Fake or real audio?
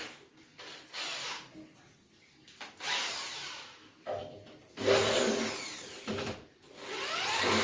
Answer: fake